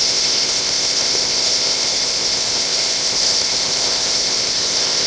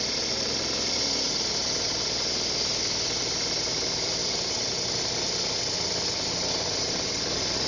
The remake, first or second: first